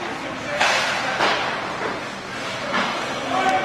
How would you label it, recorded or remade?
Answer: recorded